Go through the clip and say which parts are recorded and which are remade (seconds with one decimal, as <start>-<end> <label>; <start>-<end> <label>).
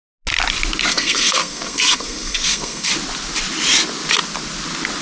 0.0-0.9 recorded; 0.9-2.9 remade; 2.9-5.0 recorded